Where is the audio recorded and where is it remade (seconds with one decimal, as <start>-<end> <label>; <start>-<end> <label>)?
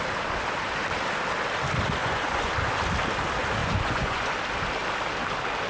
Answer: 0.0-2.0 recorded; 2.0-2.5 remade; 2.5-3.6 recorded; 3.6-4.3 remade; 4.3-5.7 recorded